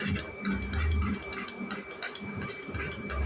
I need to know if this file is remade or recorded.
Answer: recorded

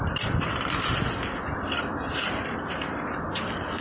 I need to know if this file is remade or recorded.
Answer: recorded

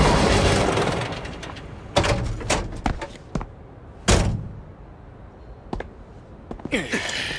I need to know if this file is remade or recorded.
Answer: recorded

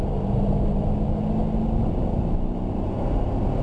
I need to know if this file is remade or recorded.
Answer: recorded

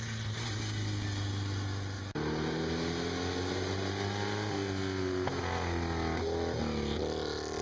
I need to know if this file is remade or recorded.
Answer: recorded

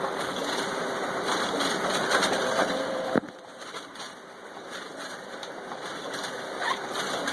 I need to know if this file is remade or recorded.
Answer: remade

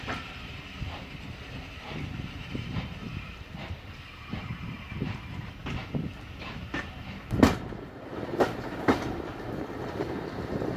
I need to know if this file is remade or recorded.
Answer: remade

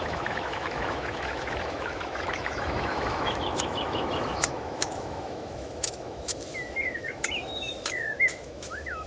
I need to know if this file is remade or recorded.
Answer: remade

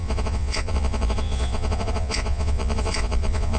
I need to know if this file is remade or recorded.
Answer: remade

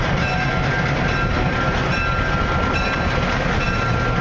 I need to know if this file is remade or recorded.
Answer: recorded